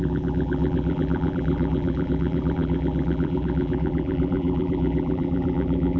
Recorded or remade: remade